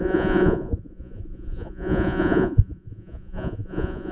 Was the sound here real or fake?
fake